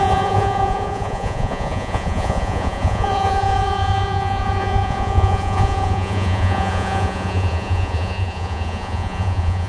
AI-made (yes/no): yes